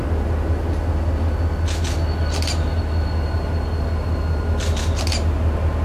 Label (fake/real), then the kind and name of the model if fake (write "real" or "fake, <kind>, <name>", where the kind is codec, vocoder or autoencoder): real